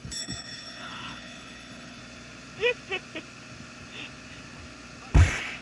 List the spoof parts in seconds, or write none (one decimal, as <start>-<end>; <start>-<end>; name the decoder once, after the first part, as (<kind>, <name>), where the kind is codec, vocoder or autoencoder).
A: 0.0-2.0 (codec, HILCodec)